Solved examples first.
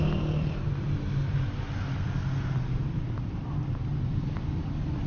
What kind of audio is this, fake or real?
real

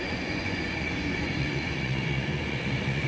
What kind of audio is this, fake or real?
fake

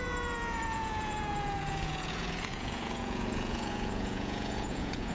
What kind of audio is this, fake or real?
fake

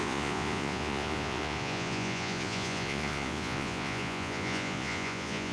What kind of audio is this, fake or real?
fake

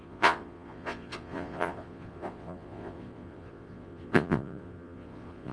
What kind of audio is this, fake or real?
fake